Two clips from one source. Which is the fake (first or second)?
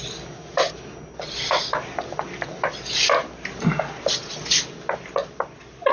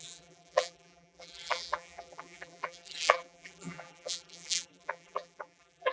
second